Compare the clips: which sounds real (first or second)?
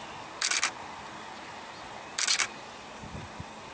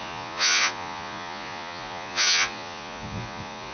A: first